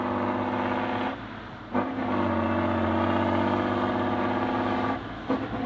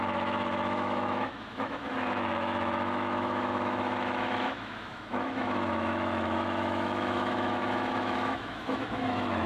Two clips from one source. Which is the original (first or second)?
first